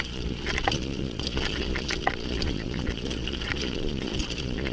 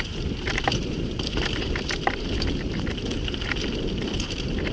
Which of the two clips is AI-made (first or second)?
first